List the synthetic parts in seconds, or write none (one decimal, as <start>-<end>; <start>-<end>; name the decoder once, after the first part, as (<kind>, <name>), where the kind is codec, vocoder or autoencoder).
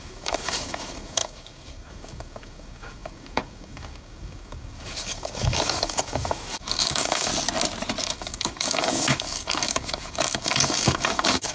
0.0-7.3 (codec, DAC); 8.0-11.5